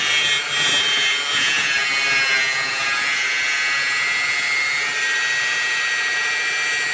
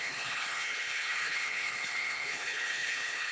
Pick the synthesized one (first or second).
second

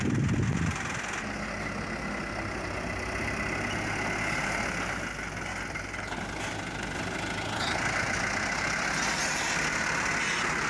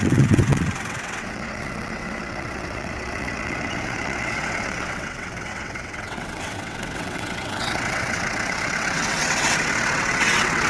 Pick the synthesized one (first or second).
second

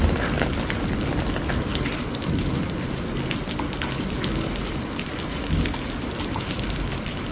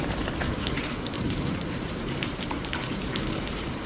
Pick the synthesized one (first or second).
second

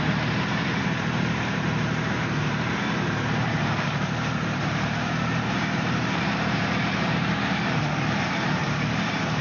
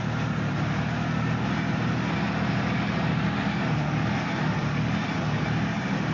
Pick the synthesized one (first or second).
first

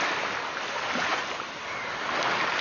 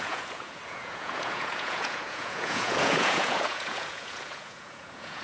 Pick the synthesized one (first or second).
second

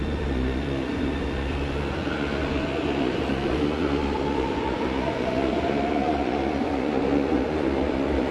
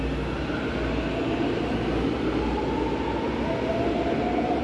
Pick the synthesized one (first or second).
first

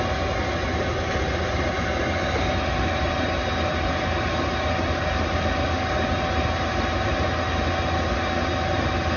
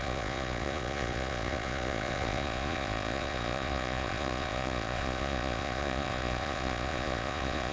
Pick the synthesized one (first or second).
second